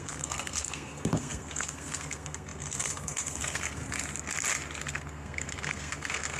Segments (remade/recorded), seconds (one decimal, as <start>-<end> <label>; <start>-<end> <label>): 0.0-3.8 remade; 3.8-4.8 recorded; 4.8-6.4 remade